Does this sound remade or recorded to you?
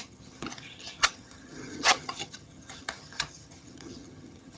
remade